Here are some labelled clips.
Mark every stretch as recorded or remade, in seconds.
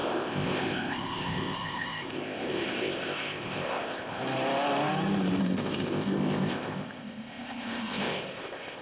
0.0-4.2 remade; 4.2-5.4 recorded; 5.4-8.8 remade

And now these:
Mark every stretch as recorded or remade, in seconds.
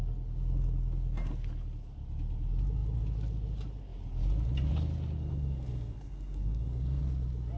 0.0-5.2 recorded; 5.2-7.0 remade; 7.0-7.6 recorded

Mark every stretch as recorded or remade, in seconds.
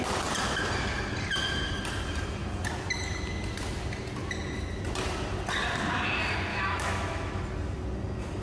0.0-6.5 recorded; 6.5-7.4 remade; 7.4-8.4 recorded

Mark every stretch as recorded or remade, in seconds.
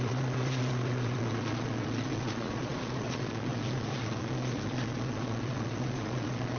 0.0-6.6 remade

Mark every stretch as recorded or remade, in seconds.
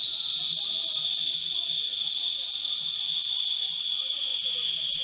0.0-5.0 recorded